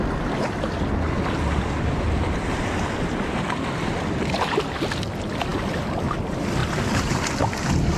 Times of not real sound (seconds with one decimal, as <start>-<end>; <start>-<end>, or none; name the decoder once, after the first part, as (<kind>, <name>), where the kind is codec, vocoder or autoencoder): 6.6-7.2 (vocoder, BigVGAN v2)